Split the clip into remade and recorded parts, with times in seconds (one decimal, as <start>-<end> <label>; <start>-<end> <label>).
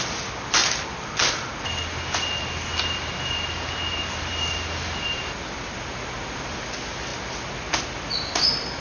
0.0-8.8 recorded